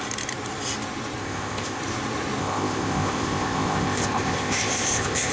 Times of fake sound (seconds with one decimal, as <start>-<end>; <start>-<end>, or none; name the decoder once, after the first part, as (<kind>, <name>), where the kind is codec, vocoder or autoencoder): 1.2-1.8 (codec, ZipCodec); 2.4-5.3